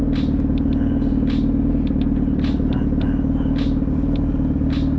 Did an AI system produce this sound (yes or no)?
no